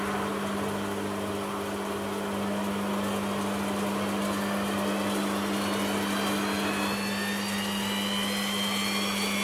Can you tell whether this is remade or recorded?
recorded